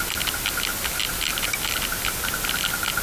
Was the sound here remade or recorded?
recorded